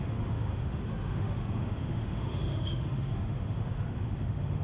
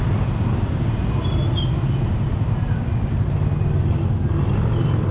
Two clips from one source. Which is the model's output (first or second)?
first